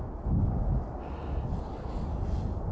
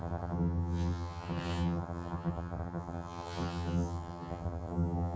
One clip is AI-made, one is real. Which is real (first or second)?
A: first